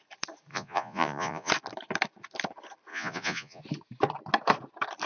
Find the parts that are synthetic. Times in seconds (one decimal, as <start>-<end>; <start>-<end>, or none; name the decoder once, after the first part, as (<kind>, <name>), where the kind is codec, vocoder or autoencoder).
0.5-1.5 (vocoder, Vocos); 2.9-3.6